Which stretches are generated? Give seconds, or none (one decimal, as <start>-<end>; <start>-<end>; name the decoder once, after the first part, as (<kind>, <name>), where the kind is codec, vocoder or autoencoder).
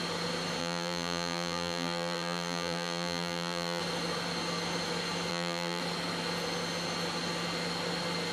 0.6-3.8 (vocoder, BigVGAN v2); 5.3-5.8